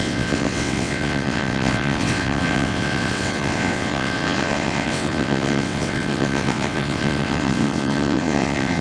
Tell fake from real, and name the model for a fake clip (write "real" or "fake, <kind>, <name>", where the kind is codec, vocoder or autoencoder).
fake, vocoder, WaveNeXt